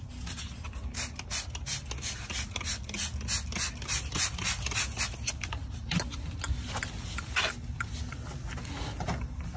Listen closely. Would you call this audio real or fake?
real